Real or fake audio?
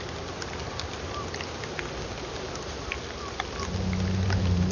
real